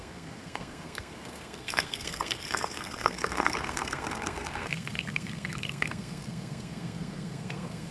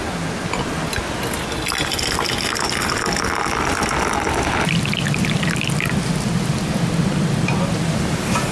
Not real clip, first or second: first